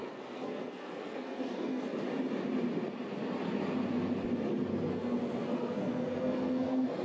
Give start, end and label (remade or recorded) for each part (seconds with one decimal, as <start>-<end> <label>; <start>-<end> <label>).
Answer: 0.0-2.0 remade; 2.0-4.7 recorded; 4.7-7.0 remade

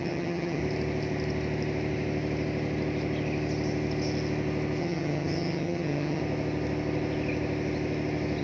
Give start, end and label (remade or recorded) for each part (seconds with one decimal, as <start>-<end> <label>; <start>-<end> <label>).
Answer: 0.0-0.6 remade; 0.6-4.8 recorded; 4.8-6.2 remade; 6.2-8.4 recorded

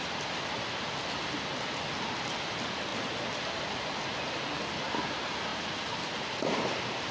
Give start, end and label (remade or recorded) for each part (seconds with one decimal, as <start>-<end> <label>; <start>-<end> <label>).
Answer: 0.0-5.5 recorded; 5.5-6.1 remade; 6.1-7.1 recorded

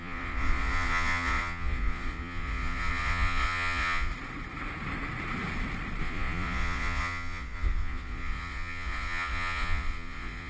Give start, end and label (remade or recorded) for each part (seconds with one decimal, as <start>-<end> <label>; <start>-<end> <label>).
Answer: 0.0-4.1 remade; 4.1-6.0 recorded; 6.0-10.5 remade

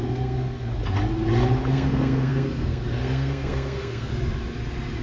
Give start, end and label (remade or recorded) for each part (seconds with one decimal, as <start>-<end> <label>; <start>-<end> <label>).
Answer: 0.0-0.7 remade; 0.7-1.7 recorded; 1.7-4.1 remade; 4.1-5.0 recorded